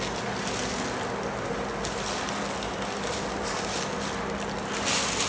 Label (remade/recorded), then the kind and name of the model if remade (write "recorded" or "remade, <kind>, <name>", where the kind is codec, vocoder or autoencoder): recorded